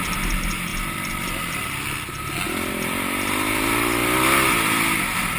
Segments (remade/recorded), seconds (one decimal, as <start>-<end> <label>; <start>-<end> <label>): 0.0-5.4 recorded